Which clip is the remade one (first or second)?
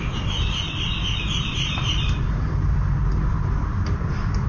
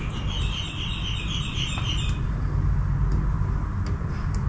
first